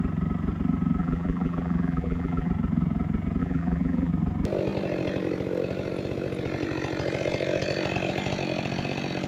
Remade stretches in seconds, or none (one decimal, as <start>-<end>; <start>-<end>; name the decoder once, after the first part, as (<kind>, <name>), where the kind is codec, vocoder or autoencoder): 1.0-2.5 (vocoder, BigVGAN v2); 3.4-4.1